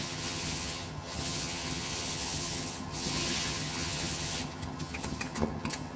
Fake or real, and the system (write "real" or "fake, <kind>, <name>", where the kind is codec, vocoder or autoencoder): fake, vocoder, HiFi-GAN